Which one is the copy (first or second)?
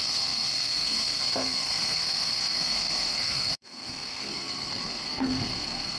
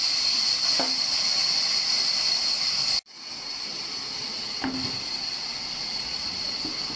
first